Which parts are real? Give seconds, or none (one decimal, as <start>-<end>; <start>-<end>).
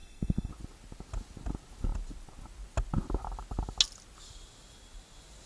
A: 0.5-5.5